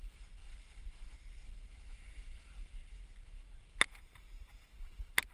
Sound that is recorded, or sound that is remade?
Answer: recorded